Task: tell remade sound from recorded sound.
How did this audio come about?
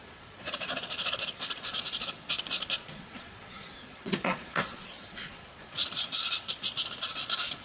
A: remade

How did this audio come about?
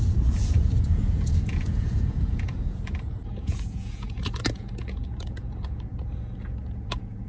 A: remade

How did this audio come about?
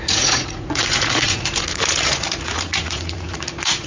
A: remade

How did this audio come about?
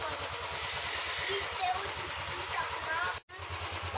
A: recorded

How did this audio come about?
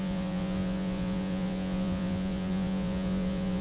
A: remade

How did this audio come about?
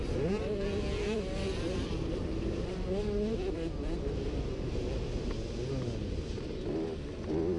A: recorded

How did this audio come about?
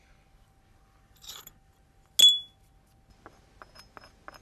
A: recorded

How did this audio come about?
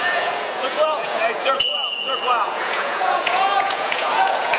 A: remade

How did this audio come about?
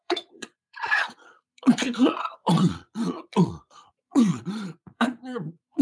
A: remade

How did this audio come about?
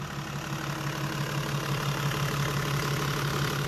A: recorded